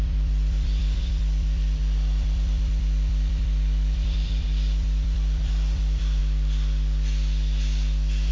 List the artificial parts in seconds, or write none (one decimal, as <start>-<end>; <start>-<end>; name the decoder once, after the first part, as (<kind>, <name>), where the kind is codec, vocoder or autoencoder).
0.0-6.2 (vocoder, BigVGAN v2)